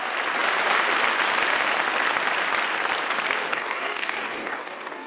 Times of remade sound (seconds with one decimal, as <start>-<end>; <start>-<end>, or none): 3.5-5.1